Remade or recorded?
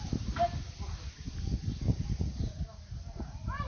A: recorded